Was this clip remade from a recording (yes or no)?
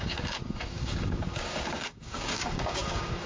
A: yes